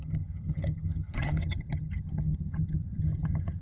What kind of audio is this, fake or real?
fake